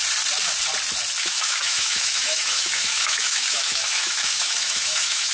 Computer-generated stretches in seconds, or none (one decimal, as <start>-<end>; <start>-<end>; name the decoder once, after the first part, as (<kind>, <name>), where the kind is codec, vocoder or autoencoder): 1.2-5.3 (autoencoder, DAC-VAE)